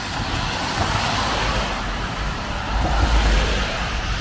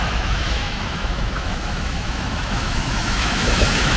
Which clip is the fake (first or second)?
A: second